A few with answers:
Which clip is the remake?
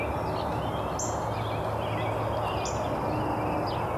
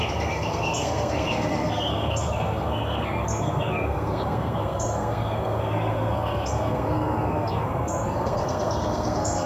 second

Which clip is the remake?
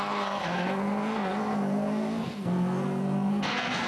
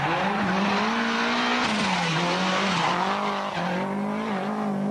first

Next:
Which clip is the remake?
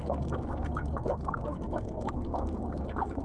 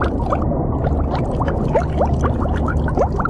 first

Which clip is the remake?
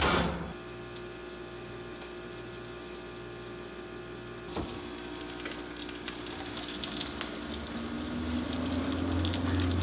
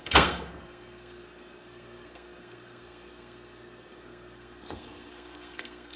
second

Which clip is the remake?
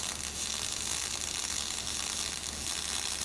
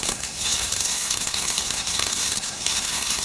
second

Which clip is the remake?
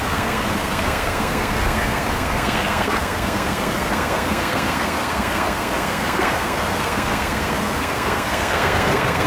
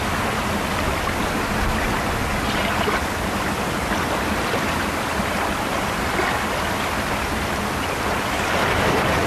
first